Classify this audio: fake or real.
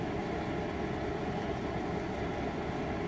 real